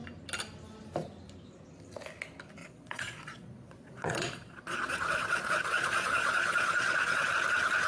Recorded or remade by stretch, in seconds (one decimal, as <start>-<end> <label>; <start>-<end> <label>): 0.0-2.6 recorded; 2.6-7.3 remade; 7.3-7.9 recorded